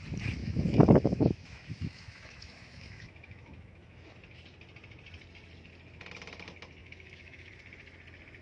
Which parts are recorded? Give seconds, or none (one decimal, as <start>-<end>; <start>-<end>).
0.0-0.4; 4.1-6.8; 7.5-8.4